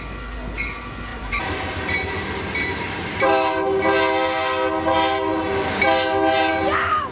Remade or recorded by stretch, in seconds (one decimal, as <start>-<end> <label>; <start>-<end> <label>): 0.0-1.1 recorded; 1.1-3.8 remade; 3.8-7.1 recorded